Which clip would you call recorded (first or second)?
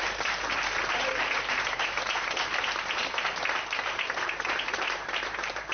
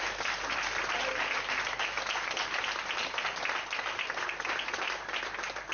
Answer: second